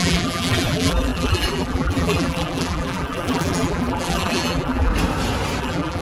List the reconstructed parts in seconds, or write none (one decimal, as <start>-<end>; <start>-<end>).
0.0-4.9; 5.6-6.0